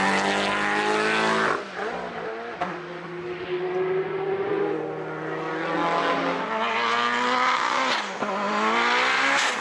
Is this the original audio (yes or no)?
yes